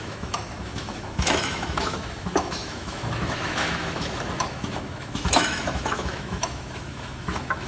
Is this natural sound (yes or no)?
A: no